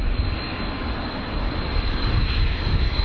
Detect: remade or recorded recorded